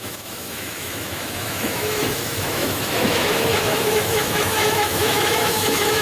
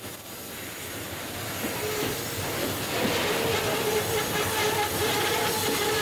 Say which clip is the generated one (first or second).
first